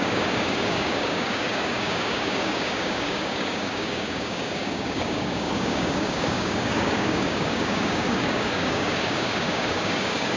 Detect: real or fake fake